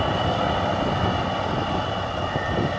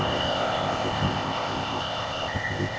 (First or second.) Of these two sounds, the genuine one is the first